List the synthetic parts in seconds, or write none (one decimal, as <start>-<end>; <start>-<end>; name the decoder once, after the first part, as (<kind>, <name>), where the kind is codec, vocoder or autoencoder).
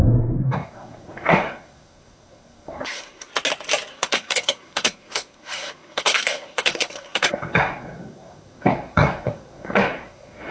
0.0-3.3 (codec, SNAC); 3.9-10.5